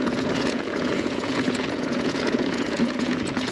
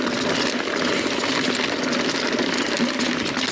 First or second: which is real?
second